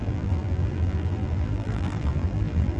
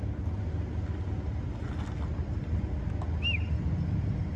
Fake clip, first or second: first